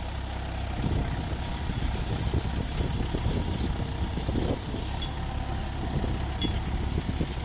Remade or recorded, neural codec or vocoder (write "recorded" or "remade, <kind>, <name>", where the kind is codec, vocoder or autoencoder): recorded